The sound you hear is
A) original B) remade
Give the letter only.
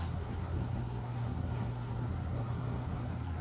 B